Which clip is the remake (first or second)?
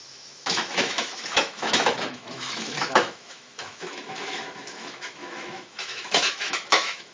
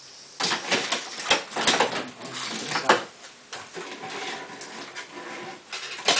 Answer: first